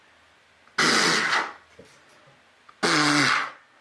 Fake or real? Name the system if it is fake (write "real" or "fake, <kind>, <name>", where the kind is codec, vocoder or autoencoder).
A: real